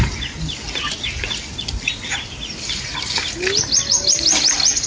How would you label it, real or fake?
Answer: real